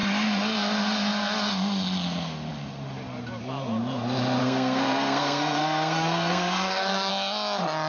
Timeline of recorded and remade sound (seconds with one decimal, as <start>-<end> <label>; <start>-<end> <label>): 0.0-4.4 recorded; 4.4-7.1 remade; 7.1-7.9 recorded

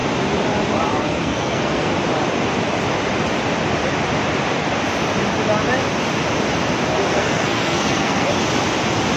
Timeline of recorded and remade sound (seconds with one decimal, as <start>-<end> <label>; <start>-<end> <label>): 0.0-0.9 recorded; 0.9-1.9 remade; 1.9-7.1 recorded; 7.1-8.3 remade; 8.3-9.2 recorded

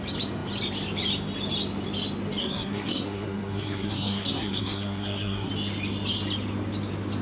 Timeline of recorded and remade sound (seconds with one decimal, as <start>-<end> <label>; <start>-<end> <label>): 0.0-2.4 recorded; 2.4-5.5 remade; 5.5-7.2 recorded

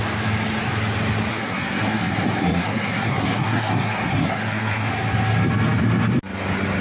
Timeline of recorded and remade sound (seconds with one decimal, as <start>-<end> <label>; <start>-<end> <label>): 0.0-1.3 recorded; 1.3-4.9 remade; 4.9-6.8 recorded

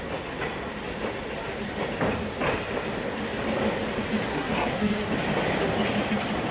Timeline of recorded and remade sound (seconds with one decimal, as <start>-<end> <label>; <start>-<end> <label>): 0.0-4.3 recorded; 4.3-5.1 remade; 5.1-6.5 recorded

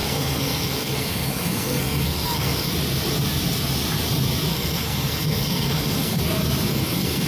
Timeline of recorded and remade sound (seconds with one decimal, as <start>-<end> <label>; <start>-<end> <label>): 0.0-2.7 remade; 2.7-4.5 recorded; 4.5-6.2 remade; 6.2-6.7 recorded; 6.7-7.3 remade

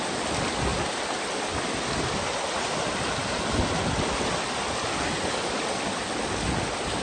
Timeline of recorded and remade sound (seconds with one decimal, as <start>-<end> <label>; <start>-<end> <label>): 0.0-7.0 recorded

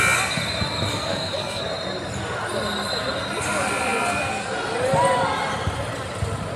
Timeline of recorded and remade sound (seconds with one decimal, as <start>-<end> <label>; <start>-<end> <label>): 0.0-0.9 recorded; 0.9-1.6 remade; 1.6-6.6 recorded